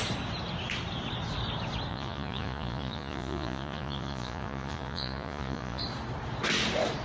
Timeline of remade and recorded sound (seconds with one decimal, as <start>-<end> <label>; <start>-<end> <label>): 0.0-1.9 recorded; 1.9-5.8 remade; 5.8-7.0 recorded